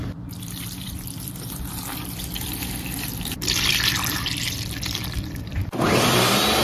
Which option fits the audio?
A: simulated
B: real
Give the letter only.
A